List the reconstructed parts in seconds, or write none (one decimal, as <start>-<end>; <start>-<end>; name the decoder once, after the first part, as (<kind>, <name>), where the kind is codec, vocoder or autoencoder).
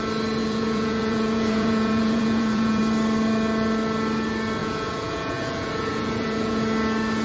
0.4-2.8 (vocoder, Vocos); 4.6-6.6